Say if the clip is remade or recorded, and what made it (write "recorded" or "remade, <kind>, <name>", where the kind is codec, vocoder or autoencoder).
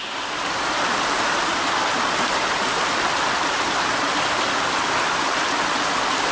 recorded